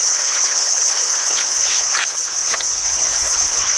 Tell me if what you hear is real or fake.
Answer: fake